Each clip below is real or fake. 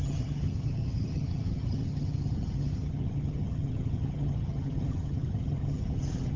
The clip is fake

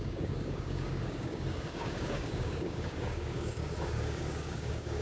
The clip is fake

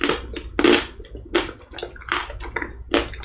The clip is real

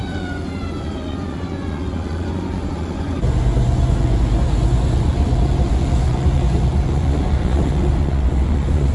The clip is fake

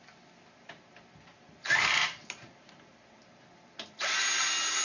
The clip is real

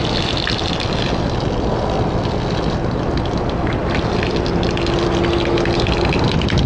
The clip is real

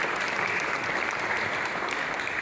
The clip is real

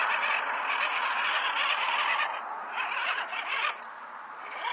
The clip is fake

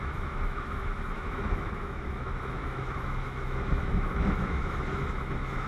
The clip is fake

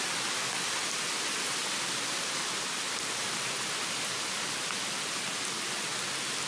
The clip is real